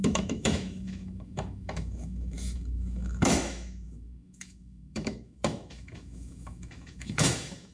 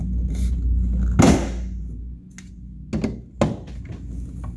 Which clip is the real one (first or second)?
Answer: second